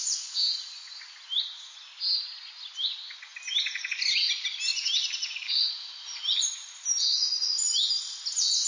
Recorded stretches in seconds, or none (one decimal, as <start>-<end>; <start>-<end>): 0.0-4.7; 7.9-8.7